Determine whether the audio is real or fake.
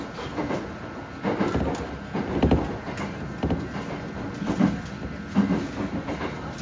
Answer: real